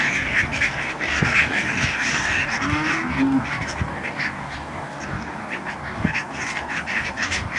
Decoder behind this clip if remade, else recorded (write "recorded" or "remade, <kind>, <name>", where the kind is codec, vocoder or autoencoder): remade, codec, DAC